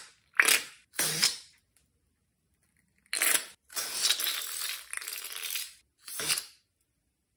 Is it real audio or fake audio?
real